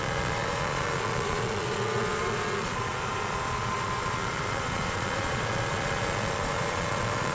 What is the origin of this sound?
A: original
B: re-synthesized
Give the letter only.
B